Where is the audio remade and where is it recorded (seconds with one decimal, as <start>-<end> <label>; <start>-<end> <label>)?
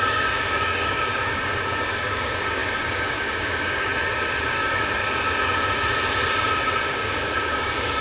0.0-3.9 remade; 3.9-4.5 recorded; 4.5-5.0 remade; 5.0-6.8 recorded; 6.8-8.0 remade